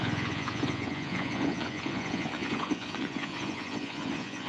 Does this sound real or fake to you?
fake